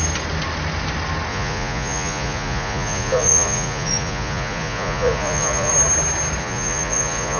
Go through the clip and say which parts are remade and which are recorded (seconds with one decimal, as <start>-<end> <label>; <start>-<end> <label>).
0.0-1.3 recorded; 1.3-5.7 remade; 5.7-6.4 recorded; 6.4-7.4 remade